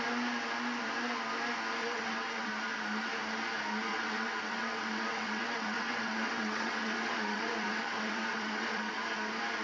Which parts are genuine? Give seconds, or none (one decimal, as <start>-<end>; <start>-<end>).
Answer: 0.0-1.8; 2.5-3.9; 8.9-9.6